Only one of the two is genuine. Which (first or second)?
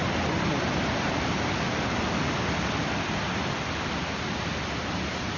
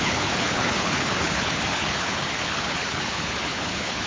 first